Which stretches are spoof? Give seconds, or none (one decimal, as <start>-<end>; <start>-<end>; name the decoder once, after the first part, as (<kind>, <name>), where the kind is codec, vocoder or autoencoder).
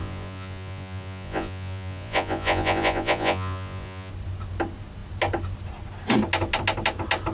0.0-4.1 (vocoder, Vocos)